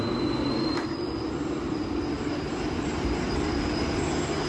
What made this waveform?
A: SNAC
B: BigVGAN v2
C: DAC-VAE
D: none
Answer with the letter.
D